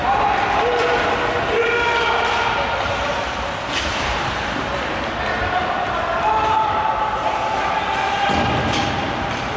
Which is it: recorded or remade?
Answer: recorded